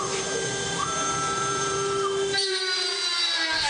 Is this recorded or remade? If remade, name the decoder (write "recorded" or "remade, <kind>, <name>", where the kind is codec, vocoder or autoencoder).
remade, vocoder, BigVGAN v2